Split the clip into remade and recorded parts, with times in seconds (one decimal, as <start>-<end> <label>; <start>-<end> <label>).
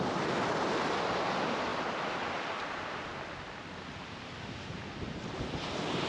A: 0.0-6.1 recorded